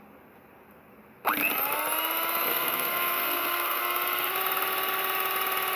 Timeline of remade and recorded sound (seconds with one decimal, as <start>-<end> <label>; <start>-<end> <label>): 0.0-2.5 recorded; 2.5-3.8 remade; 3.8-5.8 recorded